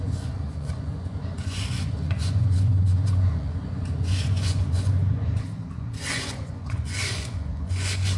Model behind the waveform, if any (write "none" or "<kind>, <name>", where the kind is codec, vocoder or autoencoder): vocoder, Vocos